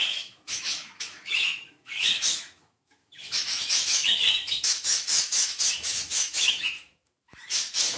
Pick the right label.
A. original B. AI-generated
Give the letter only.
B